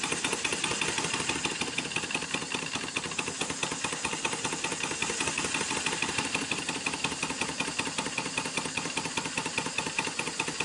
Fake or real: real